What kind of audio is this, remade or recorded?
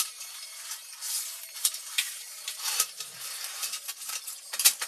remade